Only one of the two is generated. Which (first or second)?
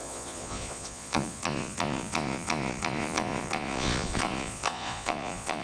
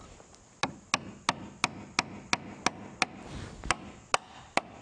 first